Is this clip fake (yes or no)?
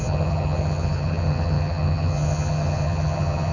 yes